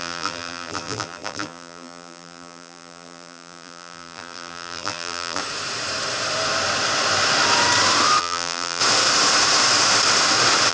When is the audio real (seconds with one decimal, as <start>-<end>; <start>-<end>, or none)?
5.4-8.2; 8.8-10.7